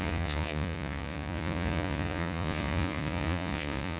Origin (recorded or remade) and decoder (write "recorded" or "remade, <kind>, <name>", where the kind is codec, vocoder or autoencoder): remade, vocoder, Vocos